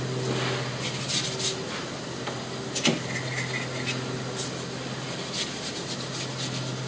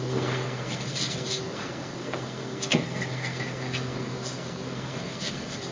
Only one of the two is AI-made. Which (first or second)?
second